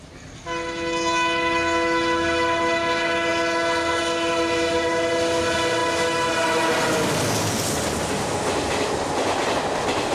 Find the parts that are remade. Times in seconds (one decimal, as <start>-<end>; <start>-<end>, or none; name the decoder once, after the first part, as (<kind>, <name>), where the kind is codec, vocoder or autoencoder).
none